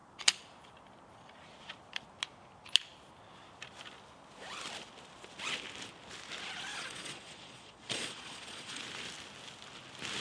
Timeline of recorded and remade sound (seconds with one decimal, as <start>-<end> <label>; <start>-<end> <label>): 0.0-6.7 recorded; 6.7-8.8 remade; 8.8-10.2 recorded